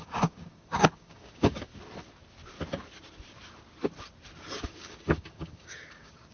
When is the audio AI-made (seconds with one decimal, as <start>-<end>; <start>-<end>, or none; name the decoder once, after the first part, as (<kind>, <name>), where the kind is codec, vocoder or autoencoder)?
0.0-1.7 (codec, DAC); 4.6-6.3